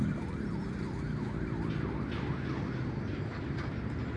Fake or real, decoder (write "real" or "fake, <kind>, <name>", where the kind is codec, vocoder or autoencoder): real